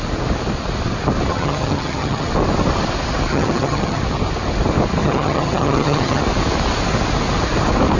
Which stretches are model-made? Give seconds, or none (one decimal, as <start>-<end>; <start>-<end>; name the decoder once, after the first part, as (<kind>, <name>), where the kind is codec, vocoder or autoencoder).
1.3-2.3 (vocoder, HiFi-GAN); 3.3-4.0; 5.0-6.2